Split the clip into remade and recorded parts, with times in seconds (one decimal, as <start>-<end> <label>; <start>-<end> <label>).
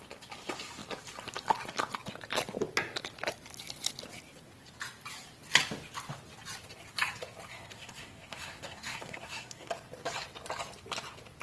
0.0-7.5 recorded; 7.5-9.7 remade; 9.7-11.4 recorded